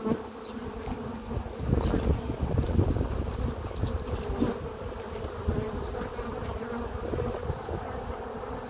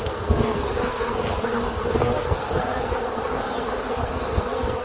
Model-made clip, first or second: second